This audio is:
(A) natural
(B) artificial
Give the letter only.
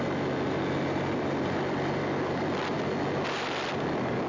A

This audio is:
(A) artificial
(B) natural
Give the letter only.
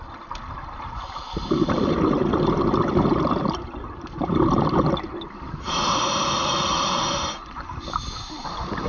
B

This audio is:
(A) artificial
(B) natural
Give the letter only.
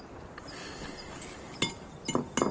B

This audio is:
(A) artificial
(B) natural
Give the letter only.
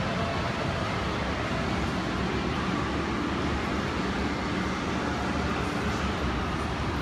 B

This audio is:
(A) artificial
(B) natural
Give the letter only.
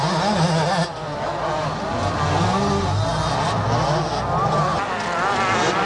B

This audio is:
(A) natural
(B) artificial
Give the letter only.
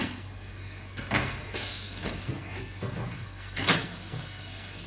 B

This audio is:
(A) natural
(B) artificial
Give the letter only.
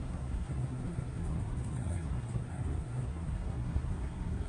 B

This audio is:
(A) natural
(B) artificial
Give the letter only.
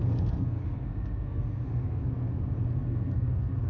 B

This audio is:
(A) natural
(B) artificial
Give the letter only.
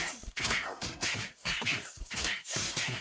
B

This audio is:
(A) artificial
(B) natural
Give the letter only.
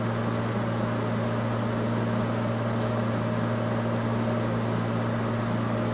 B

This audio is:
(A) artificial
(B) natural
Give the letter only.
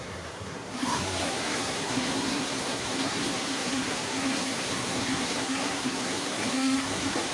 A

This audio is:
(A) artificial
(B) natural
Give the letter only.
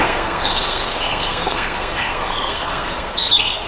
A